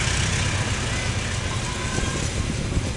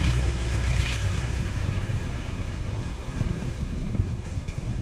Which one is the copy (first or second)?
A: second